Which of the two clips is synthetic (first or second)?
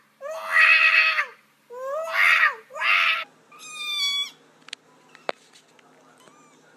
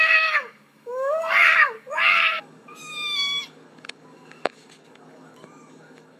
second